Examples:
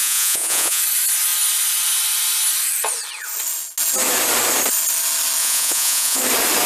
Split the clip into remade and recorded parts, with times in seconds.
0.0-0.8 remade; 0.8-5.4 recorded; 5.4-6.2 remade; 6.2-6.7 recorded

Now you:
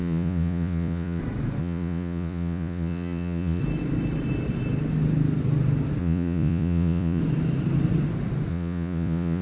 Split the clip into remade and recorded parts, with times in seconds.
0.0-1.2 remade; 1.2-1.6 recorded; 1.6-3.6 remade; 3.6-6.0 recorded; 6.0-7.2 remade; 7.2-8.5 recorded; 8.5-9.4 remade

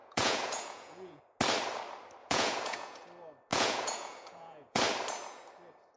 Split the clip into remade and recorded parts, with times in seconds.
0.0-1.2 remade; 1.2-2.2 recorded; 2.2-3.0 remade; 3.0-3.5 recorded; 3.5-4.8 remade; 4.8-6.0 recorded

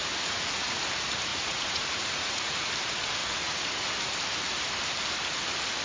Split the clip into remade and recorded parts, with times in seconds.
0.0-0.8 remade; 0.8-1.3 recorded; 1.3-2.7 remade; 2.7-3.2 recorded; 3.2-3.9 remade; 3.9-5.8 recorded

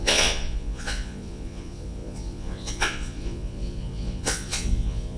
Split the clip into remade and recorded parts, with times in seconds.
0.0-5.2 remade

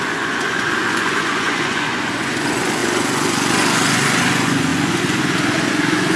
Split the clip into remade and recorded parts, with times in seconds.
0.0-6.2 remade

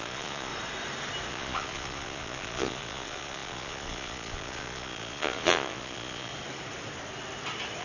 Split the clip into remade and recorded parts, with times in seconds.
0.0-0.5 remade; 0.5-1.3 recorded; 1.3-6.3 remade; 6.3-7.8 recorded

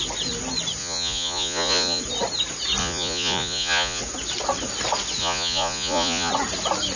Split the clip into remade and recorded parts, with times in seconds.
0.0-0.8 recorded; 0.8-2.0 remade; 2.0-2.8 recorded; 2.8-4.0 remade; 4.0-5.2 recorded; 5.2-6.3 remade; 6.3-7.0 recorded